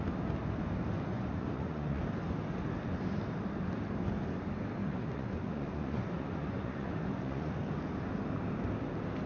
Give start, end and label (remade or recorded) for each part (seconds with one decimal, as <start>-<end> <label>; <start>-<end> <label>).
0.0-1.1 recorded; 1.1-2.0 remade; 2.0-4.8 recorded; 4.8-7.5 remade; 7.5-9.3 recorded